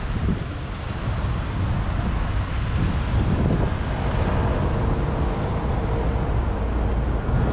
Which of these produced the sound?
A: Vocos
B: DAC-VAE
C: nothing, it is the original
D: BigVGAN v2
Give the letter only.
C